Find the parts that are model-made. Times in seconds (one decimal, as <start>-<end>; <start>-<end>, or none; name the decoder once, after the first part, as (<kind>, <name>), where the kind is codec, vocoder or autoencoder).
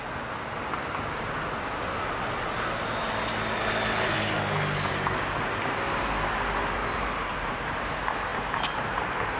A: 6.8-7.9 (vocoder, BigVGAN v2); 8.3-9.0